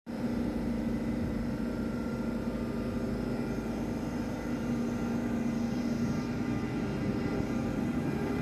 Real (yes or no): no